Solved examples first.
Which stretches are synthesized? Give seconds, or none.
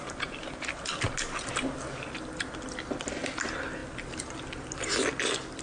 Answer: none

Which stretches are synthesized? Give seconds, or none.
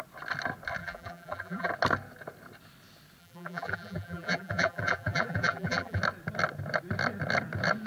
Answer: 0.8-1.7 (vocoder, BigVGAN v2); 3.2-6.0